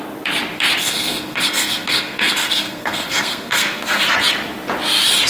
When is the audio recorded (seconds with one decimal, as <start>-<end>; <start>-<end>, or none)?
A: 0.0-0.8; 4.0-5.3